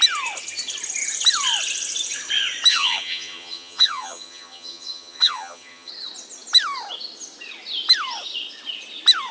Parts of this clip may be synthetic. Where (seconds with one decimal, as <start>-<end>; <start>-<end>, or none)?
2.7-5.9